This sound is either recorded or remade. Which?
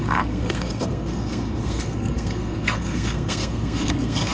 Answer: remade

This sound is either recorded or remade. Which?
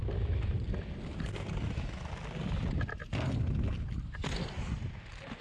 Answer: recorded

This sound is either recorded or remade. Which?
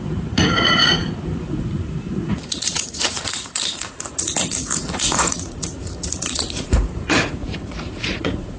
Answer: remade